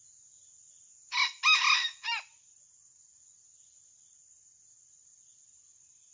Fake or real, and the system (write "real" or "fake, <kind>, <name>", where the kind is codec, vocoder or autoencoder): real